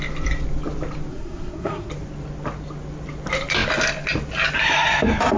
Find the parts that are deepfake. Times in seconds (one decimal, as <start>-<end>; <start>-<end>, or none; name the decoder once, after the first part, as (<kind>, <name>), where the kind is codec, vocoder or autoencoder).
1.1-1.9 (codec, SNAC)